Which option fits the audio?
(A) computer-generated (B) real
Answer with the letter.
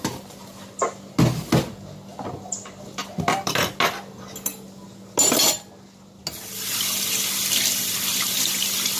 B